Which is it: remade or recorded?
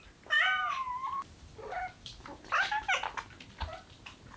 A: recorded